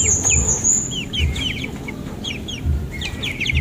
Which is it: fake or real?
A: real